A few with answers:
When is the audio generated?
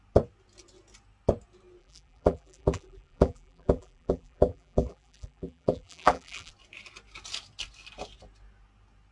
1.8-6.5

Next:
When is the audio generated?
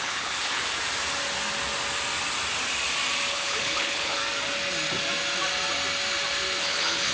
0.0-0.6; 3.3-4.2; 6.6-7.1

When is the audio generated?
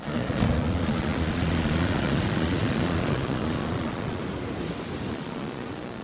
0.0-4.2; 5.1-6.0